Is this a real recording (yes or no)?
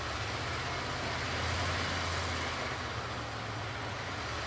yes